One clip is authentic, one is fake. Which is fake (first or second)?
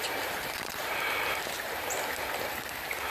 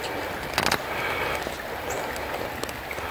first